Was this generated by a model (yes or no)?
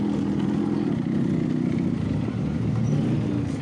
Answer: no